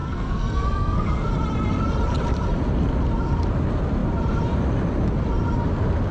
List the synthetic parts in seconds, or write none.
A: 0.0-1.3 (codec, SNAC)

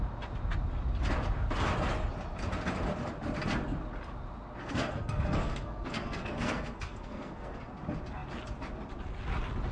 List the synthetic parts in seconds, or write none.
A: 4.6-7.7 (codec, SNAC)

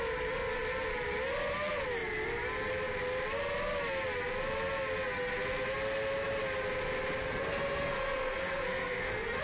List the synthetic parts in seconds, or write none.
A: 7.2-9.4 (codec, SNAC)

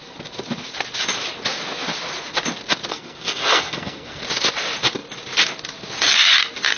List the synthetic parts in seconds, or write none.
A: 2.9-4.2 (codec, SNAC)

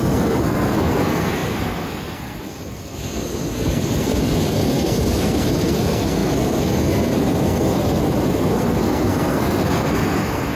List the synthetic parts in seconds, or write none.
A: 0.0-10.6 (codec, SNAC)